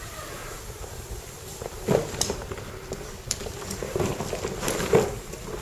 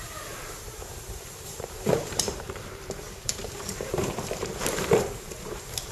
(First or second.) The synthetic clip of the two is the second